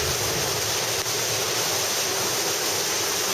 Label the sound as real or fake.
real